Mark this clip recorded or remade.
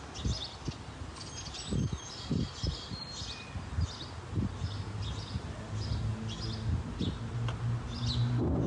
recorded